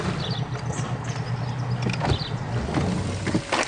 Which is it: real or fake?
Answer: real